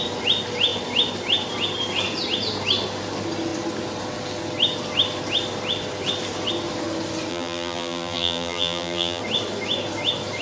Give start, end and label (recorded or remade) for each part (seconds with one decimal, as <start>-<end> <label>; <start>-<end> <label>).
0.0-7.3 recorded; 7.3-9.2 remade; 9.2-10.4 recorded